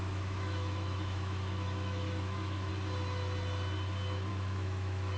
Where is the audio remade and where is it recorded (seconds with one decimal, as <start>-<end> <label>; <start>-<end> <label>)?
0.0-2.7 remade; 2.7-4.3 recorded; 4.3-5.2 remade